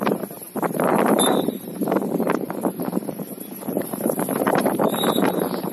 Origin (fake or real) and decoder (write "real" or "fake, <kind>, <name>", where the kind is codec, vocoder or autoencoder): fake, vocoder, BigVGAN v2